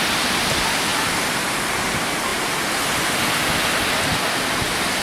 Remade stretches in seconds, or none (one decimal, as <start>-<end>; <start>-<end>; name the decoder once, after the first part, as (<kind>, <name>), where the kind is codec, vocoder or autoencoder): 0.9-1.6 (vocoder, BigVGAN v2)